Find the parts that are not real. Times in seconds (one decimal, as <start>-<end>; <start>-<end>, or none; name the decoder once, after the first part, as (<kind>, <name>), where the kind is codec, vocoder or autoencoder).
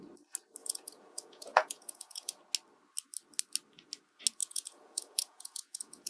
0.6-2.4 (vocoder, Vocos); 4.4-6.1